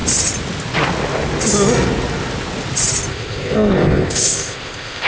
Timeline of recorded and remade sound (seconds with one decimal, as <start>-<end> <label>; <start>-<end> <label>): 0.0-3.1 recorded; 3.1-5.1 remade